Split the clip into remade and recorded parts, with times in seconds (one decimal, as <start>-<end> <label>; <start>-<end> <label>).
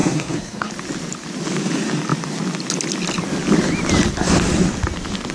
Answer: 0.0-0.7 remade; 0.7-5.3 recorded